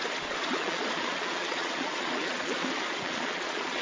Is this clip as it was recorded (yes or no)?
no